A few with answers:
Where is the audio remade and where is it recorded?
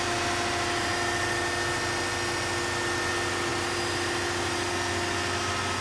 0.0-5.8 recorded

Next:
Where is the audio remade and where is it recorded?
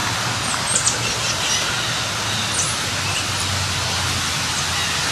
0.0-5.1 recorded